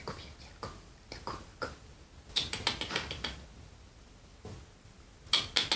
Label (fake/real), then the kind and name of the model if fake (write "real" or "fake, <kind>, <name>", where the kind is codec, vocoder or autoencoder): real